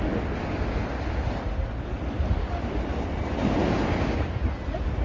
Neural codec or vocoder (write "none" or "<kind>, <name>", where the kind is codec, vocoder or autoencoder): none